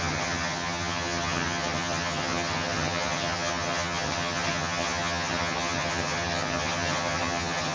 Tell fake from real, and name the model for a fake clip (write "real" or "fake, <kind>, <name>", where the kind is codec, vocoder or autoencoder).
fake, vocoder, HiFi-GAN